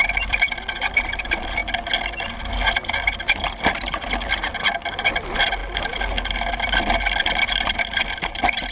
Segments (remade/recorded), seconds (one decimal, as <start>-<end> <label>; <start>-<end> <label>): 0.0-1.6 remade; 1.6-3.3 recorded; 3.3-4.5 remade; 4.5-5.1 recorded; 5.1-5.6 remade; 5.6-7.5 recorded; 7.5-8.7 remade